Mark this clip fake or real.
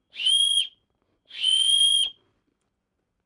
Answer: fake